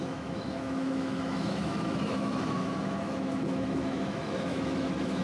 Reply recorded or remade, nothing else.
remade